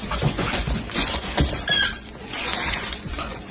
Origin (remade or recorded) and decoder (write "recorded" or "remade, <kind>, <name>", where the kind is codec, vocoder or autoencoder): remade, vocoder, Vocos